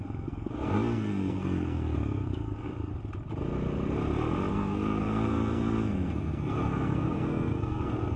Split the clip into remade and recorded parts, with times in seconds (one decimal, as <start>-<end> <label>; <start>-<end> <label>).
0.0-2.9 remade; 2.9-4.5 recorded; 4.5-8.2 remade